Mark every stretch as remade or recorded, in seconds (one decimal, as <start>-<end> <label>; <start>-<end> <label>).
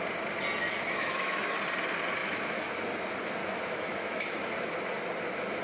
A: 0.0-0.6 recorded; 0.6-1.6 remade; 1.6-2.2 recorded; 2.2-2.7 remade; 2.7-3.4 recorded; 3.4-4.7 remade; 4.7-5.6 recorded